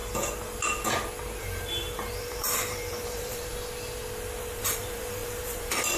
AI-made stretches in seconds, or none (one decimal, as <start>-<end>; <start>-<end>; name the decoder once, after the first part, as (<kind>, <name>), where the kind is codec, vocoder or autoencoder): 1.4-3.5 (vocoder, BigVGAN v2); 4.4-6.0